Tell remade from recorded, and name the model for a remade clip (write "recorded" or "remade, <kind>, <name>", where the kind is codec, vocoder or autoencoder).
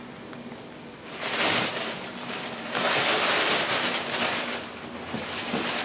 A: recorded